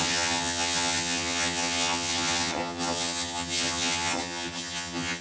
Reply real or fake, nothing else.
fake